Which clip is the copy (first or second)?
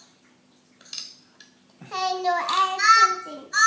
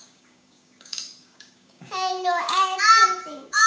second